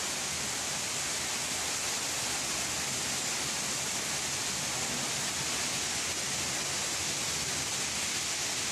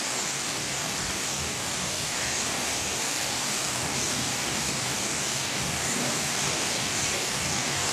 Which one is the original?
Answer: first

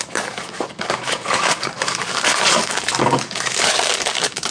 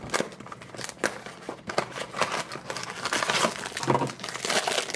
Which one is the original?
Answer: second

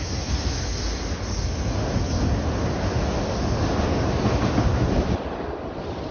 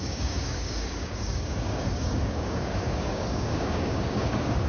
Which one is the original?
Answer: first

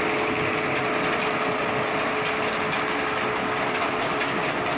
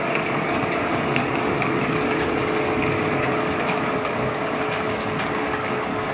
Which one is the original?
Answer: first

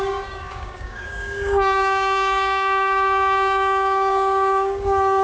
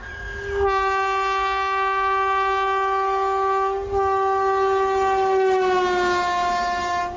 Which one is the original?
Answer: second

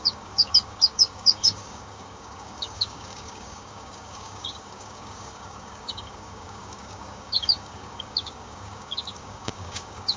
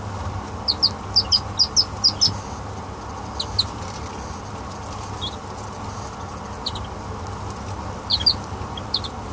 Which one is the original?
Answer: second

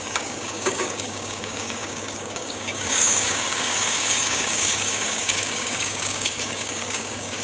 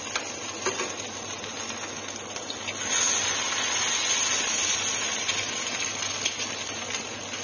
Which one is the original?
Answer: second